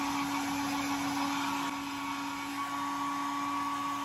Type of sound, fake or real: real